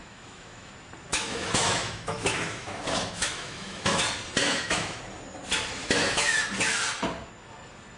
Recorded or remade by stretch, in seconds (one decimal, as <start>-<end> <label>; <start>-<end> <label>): 0.0-0.7 remade; 0.7-1.1 recorded; 1.1-4.0 remade; 4.0-4.4 recorded; 4.4-5.0 remade; 5.0-5.8 recorded; 5.8-6.4 remade; 6.4-8.0 recorded